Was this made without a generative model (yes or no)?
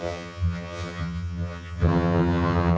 no